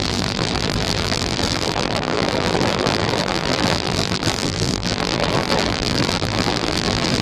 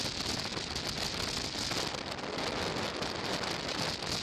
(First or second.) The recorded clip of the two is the second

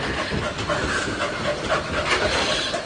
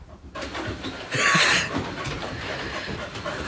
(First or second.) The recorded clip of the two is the first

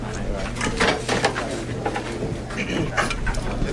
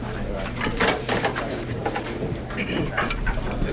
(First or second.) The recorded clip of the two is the first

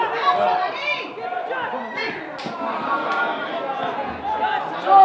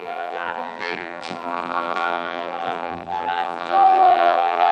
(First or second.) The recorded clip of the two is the first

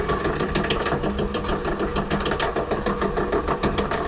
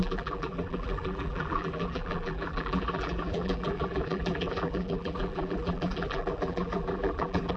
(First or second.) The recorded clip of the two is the first